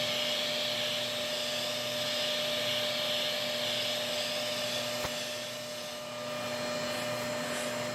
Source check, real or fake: real